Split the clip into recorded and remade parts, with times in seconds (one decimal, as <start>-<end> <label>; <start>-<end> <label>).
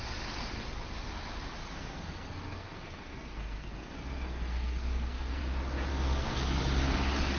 0.0-1.6 recorded; 1.6-5.4 remade; 5.4-5.9 recorded; 5.9-6.6 remade; 6.6-7.4 recorded